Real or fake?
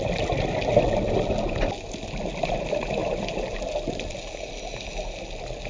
real